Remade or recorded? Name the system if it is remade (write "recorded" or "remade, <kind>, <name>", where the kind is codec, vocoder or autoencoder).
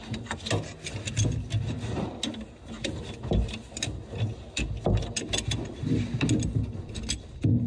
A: recorded